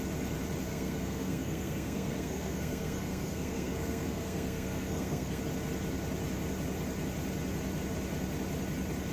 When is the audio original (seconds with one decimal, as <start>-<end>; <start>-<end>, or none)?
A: 0.0-0.7; 5.4-9.1